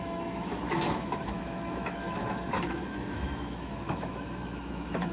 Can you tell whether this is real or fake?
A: fake